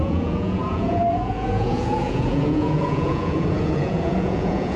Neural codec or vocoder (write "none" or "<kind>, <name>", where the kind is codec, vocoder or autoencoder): vocoder, Vocos